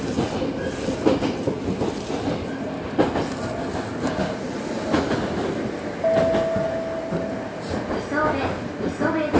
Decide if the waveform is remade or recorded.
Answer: recorded